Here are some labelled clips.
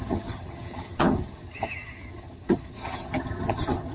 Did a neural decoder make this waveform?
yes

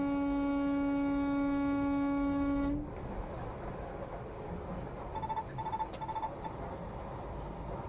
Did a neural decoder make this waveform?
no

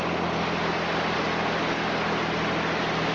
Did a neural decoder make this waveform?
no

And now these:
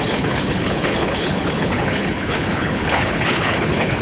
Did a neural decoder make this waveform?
yes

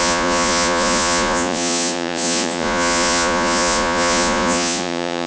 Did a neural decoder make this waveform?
yes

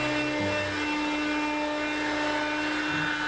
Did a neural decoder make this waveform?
no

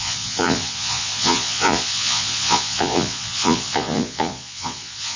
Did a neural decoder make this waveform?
yes